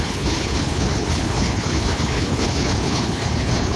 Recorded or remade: remade